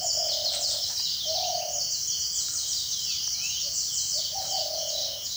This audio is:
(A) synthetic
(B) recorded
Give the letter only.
B